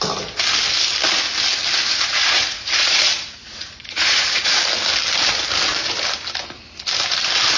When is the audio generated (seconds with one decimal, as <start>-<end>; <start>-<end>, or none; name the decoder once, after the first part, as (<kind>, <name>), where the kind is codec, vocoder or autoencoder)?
1.8-4.6 (vocoder, Vocos)

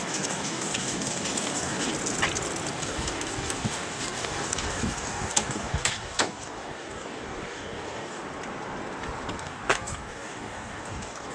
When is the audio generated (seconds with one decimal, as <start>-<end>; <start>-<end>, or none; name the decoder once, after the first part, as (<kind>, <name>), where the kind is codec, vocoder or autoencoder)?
0.0-1.9 (codec, DAC); 2.7-8.2; 9.4-11.3

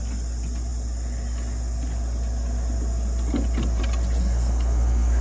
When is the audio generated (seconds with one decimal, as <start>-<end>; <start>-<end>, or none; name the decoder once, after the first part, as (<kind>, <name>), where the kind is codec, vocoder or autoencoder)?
4.2-5.2 (codec, SNAC)

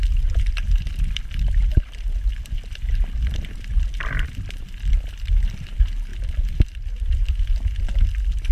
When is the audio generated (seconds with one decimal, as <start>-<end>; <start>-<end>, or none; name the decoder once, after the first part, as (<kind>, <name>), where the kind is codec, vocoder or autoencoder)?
none

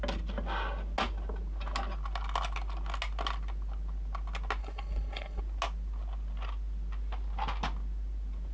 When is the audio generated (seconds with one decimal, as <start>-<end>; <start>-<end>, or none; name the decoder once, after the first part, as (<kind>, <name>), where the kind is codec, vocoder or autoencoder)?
4.6-5.4 (codec, HILCodec)

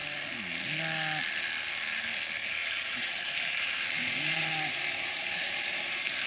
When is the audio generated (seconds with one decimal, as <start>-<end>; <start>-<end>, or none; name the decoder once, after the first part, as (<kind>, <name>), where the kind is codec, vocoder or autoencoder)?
2.6-6.3 (vocoder, BigVGAN v2)

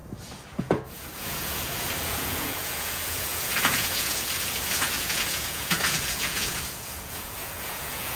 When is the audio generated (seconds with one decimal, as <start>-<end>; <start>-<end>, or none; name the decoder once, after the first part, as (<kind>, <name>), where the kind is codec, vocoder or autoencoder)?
0.6-8.2 (vocoder, Vocos)

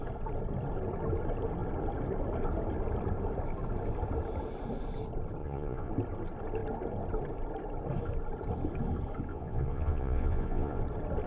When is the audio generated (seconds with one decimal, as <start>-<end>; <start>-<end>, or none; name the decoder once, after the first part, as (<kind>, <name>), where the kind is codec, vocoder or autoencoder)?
5.4-5.9 (vocoder, Vocos); 9.3-10.8